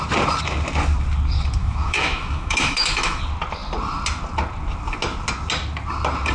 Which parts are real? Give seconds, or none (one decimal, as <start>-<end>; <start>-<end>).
0.0-1.6; 3.2-6.3